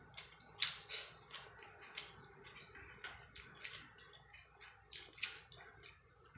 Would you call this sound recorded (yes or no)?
yes